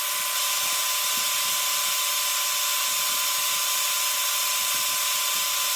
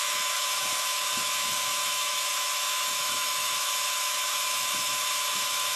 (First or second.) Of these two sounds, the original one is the first